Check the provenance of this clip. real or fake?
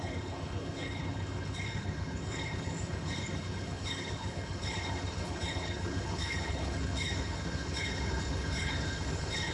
fake